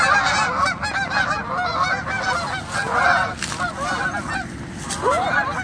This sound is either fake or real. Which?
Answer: real